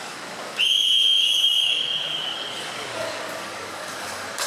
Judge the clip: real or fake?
fake